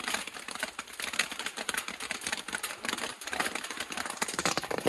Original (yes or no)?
no